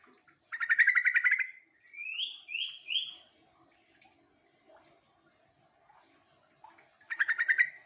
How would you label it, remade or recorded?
recorded